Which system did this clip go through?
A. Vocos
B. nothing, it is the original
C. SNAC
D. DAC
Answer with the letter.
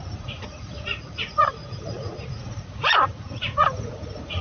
A